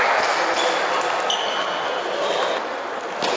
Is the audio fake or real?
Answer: real